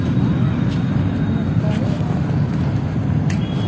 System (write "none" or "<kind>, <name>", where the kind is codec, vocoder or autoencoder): none